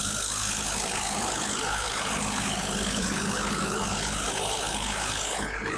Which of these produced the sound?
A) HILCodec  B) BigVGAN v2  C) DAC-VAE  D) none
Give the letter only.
A